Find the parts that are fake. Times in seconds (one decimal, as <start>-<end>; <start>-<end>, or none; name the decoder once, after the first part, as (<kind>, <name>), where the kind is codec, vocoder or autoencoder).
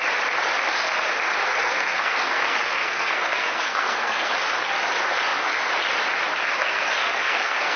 1.4-4.3 (codec, SNAC); 6.6-7.8